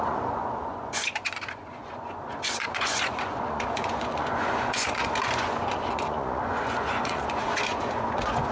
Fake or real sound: fake